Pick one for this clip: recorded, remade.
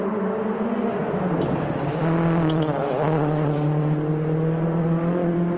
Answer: recorded